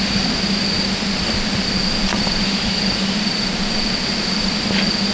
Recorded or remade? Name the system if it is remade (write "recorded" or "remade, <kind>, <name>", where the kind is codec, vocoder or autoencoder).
recorded